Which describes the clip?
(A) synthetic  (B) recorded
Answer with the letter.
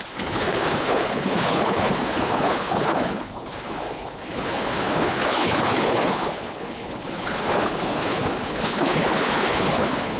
A